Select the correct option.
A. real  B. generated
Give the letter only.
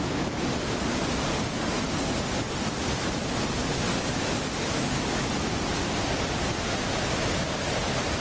A